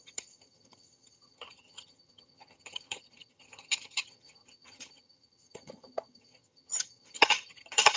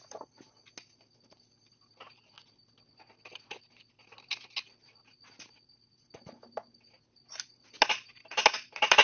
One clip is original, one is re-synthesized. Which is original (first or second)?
second